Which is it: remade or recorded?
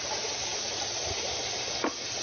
recorded